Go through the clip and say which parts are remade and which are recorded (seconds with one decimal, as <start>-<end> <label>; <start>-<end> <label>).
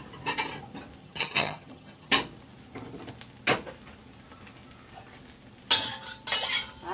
0.0-1.0 recorded; 1.0-2.1 remade; 2.1-6.9 recorded